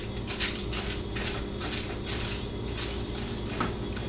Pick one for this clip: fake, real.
real